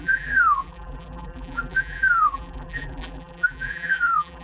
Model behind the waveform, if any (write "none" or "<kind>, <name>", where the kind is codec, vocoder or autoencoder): vocoder, BigVGAN v2